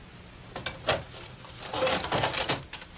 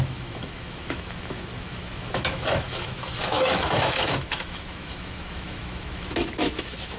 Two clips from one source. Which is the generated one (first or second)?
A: second